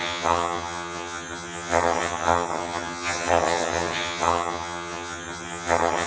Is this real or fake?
fake